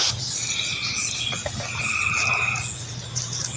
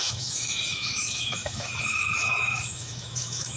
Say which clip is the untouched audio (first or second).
first